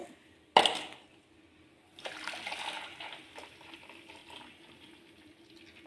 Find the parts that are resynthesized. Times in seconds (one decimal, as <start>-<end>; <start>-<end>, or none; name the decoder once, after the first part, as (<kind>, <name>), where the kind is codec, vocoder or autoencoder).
4.2-5.0 (vocoder, BigVGAN v2)